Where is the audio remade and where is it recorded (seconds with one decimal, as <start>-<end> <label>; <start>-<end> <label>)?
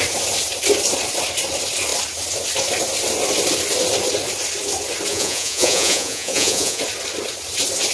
0.0-5.1 recorded; 5.1-6.8 remade; 6.8-7.9 recorded